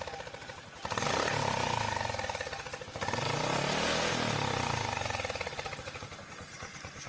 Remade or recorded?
recorded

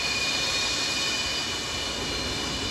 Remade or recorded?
recorded